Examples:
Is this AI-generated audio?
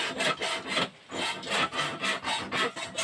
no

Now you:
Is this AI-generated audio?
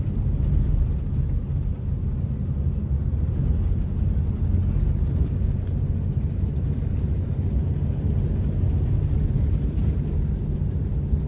no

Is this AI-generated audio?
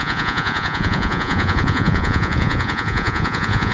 yes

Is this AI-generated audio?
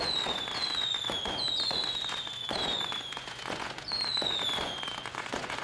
yes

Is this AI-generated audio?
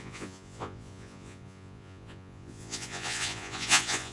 yes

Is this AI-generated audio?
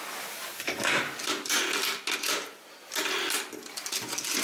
no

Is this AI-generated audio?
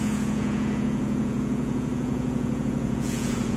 yes